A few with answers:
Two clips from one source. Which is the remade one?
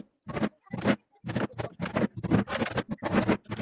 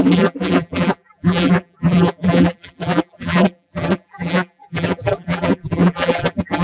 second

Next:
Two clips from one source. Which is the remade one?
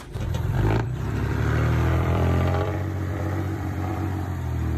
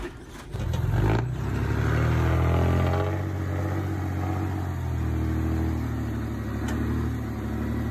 first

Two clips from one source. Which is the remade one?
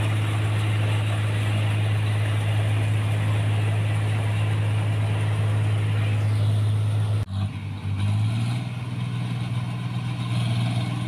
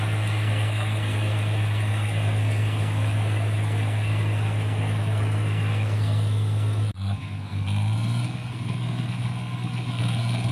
second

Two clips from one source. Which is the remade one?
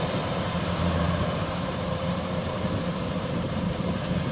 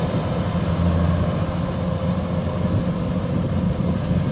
first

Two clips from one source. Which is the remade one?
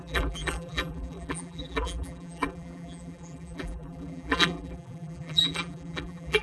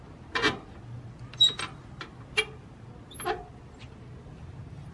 first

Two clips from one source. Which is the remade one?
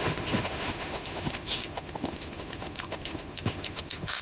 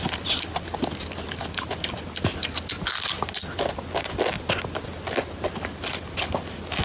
first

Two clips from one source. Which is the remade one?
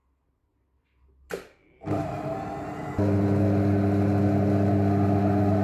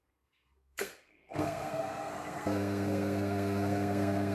second